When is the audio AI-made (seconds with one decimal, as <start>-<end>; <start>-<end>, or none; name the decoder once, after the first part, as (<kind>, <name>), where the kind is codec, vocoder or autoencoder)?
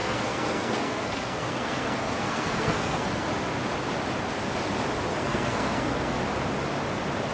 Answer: 0.0-3.3 (codec, SNAC); 5.1-6.2